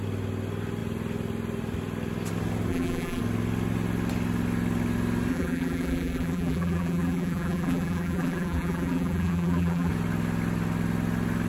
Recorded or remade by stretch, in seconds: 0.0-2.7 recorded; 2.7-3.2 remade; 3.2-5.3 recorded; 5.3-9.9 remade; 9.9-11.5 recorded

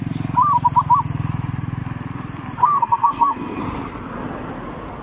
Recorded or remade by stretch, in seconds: 0.0-2.6 recorded; 2.6-3.6 remade; 3.6-5.0 recorded

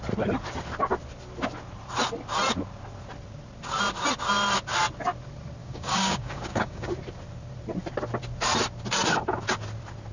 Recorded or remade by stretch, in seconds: 0.0-5.6 recorded; 5.6-6.9 remade; 6.9-10.1 recorded

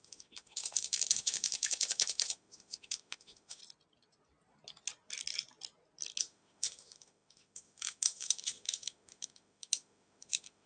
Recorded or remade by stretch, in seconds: 0.0-3.6 remade; 3.6-6.2 recorded; 6.2-10.7 remade

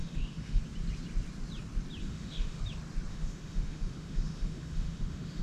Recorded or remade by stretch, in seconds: 0.0-0.6 remade; 0.6-2.0 recorded; 2.0-2.6 remade; 2.6-3.1 recorded; 3.1-5.4 remade